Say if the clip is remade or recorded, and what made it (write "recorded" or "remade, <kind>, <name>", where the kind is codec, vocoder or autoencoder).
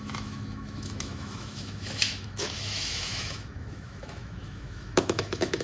remade, autoencoder, DAC-VAE